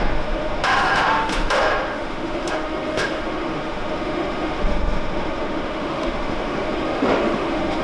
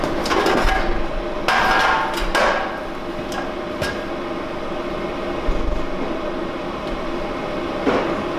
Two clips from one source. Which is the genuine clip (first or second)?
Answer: second